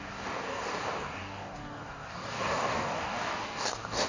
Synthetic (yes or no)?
yes